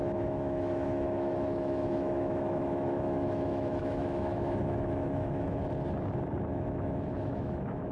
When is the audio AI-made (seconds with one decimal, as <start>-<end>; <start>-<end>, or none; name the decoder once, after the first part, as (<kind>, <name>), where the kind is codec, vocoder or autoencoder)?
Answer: 0.0-5.6 (autoencoder, DAC-VAE); 6.4-7.9